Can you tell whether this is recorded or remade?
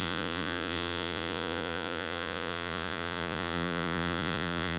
remade